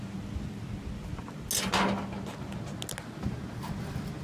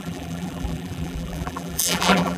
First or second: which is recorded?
first